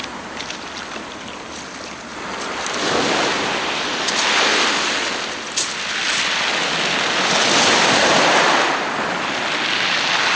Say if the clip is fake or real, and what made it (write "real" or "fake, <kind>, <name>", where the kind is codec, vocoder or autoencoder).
real